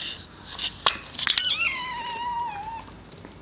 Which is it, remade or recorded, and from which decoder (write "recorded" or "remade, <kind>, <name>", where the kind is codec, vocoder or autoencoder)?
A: recorded